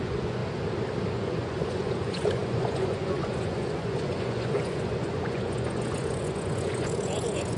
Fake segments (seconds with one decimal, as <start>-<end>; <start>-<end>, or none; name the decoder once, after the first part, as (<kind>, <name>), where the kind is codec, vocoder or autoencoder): 0.0-0.4 (vocoder, Vocos); 1.1-7.6